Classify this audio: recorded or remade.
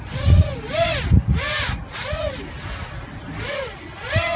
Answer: recorded